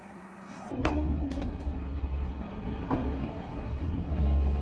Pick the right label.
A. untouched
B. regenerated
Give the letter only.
B